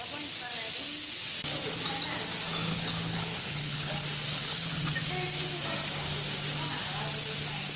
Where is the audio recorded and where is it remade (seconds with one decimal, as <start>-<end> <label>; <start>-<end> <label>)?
0.0-2.7 recorded; 2.7-3.9 remade; 3.9-4.3 recorded; 4.3-4.9 remade; 4.9-7.8 recorded